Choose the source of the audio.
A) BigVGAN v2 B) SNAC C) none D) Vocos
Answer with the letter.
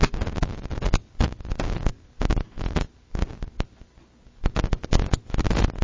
C